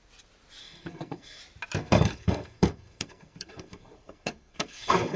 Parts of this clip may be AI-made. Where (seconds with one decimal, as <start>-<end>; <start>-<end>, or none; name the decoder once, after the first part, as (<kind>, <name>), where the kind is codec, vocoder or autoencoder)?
0.6-1.4 (codec, SNAC); 1.8-5.2